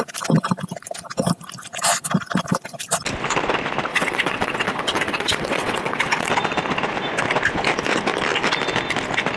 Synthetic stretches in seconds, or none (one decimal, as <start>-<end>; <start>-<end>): 3.9-6.3